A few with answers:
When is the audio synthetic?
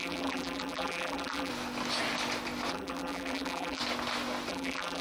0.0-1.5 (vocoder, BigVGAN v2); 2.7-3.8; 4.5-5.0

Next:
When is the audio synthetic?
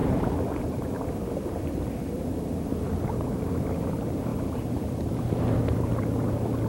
0.0-3.5 (vocoder, BigVGAN v2); 4.3-6.3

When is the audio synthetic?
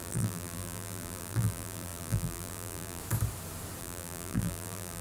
0.0-3.0 (vocoder, BigVGAN v2); 3.8-5.0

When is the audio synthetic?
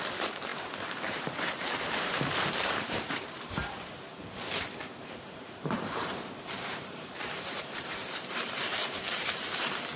0.0-4.1 (vocoder, BigVGAN v2); 5.4-10.0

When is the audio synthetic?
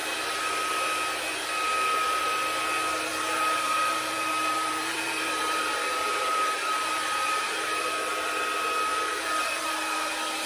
3.1-7.9 (vocoder, BigVGAN v2); 8.9-10.1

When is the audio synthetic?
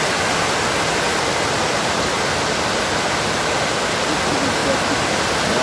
1.1-2.4 (vocoder, BigVGAN v2)